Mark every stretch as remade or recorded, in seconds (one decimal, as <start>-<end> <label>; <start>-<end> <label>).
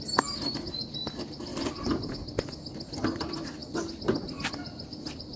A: 0.0-1.5 recorded; 1.5-2.1 remade; 2.1-5.4 recorded